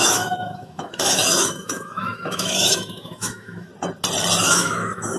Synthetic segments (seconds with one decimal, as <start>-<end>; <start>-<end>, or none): 0.0-3.7; 4.4-5.2